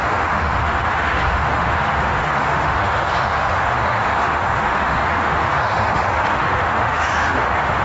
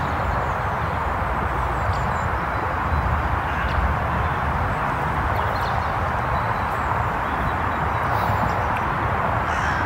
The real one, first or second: second